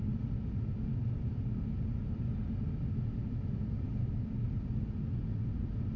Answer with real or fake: real